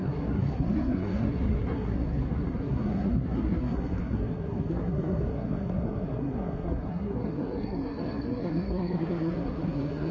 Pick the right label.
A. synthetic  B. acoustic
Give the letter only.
A